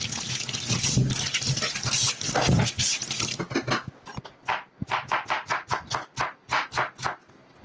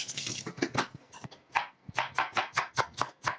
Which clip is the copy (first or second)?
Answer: second